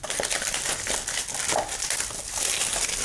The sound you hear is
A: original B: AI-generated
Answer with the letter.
A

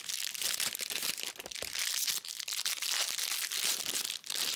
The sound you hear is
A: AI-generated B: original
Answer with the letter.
B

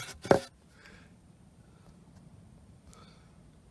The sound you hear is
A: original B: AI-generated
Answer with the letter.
A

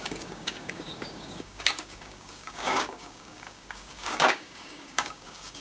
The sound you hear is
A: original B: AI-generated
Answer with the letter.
B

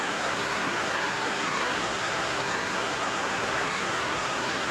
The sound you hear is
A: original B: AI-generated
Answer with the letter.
B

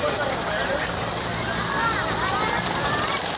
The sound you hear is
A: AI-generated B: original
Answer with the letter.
A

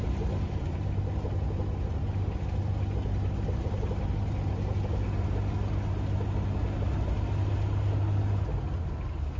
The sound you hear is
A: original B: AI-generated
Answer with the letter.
A